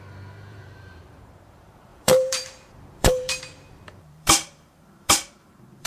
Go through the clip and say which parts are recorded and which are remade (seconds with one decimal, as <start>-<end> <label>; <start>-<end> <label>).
0.0-5.9 remade

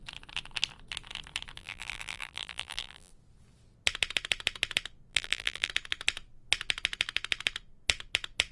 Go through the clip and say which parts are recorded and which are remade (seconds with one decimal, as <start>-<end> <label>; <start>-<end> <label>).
0.0-1.6 recorded; 1.6-3.1 remade; 3.1-5.1 recorded; 5.1-5.7 remade; 5.7-8.5 recorded

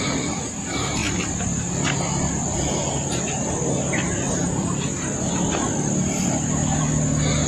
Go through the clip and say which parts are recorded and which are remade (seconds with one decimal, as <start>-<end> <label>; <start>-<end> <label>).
0.0-4.5 recorded; 4.5-6.8 remade; 6.8-7.5 recorded